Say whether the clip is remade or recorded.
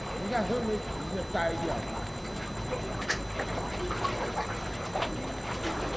recorded